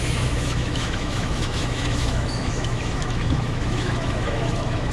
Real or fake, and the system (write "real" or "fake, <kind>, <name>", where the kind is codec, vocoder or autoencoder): fake, autoencoder, DAC-VAE